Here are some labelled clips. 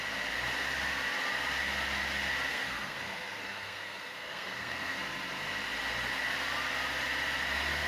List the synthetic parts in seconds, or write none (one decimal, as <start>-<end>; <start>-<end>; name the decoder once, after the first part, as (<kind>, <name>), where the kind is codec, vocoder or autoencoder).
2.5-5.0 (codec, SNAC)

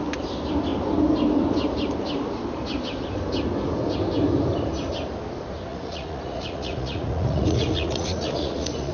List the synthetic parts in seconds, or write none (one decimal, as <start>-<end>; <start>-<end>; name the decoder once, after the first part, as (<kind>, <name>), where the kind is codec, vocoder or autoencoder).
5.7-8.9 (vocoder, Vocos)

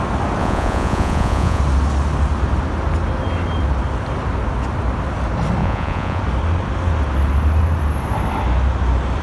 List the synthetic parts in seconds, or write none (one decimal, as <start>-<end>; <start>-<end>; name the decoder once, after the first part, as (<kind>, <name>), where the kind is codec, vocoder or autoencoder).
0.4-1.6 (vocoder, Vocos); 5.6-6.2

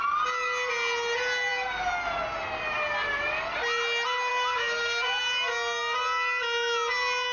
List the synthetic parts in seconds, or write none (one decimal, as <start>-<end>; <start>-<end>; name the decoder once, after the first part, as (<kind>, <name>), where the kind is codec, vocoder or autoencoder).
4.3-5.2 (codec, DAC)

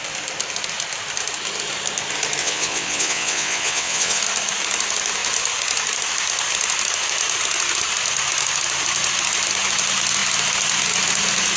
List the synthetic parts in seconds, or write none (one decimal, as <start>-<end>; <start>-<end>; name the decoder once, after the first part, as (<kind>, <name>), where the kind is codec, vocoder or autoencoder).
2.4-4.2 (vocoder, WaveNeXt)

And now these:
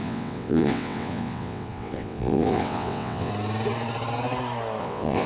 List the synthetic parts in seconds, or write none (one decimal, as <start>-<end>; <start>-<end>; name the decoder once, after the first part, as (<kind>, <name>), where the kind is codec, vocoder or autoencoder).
0.0-3.3 (vocoder, WaveNeXt); 4.8-5.3

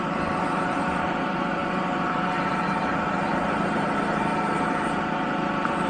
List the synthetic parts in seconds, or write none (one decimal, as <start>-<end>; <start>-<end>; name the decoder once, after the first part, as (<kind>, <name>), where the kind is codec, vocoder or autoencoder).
0.0-5.9 (vocoder, BigVGAN v2)

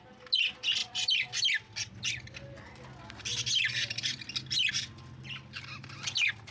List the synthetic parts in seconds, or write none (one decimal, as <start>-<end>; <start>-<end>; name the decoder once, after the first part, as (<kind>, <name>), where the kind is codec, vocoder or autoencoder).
none